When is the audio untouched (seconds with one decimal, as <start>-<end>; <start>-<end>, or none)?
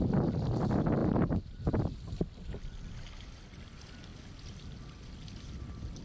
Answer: 0.0-1.0; 1.7-6.0